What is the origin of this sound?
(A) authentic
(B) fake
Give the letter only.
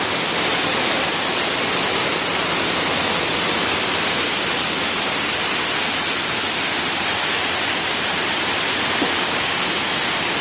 B